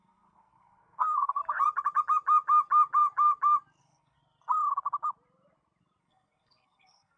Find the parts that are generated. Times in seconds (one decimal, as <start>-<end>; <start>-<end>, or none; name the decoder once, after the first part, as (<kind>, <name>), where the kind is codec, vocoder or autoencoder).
0.0-1.4 (codec, SNAC); 3.8-4.2; 6.0-7.2